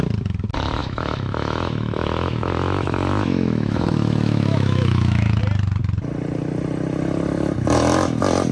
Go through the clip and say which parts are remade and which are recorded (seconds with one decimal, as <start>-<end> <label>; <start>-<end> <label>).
0.0-0.8 recorded; 0.8-5.4 remade; 5.4-8.5 recorded